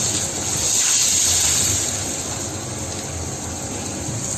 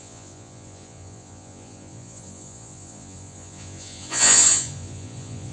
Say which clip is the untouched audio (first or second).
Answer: first